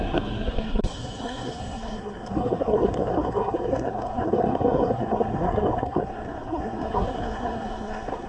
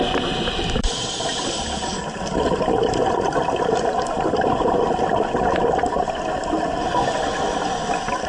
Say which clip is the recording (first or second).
second